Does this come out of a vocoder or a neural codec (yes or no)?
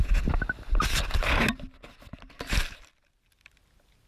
no